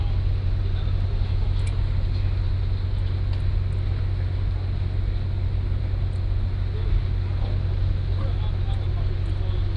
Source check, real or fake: real